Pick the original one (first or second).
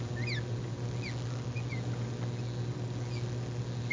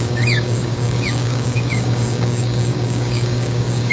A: first